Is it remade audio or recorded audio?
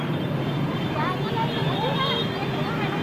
recorded